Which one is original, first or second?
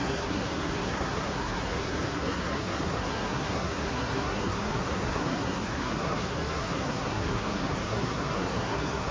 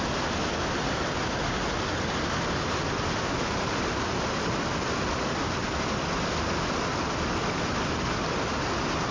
second